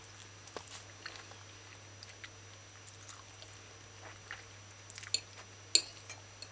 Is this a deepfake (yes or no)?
no